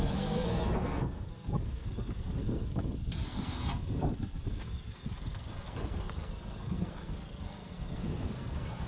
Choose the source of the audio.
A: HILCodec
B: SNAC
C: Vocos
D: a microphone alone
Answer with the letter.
B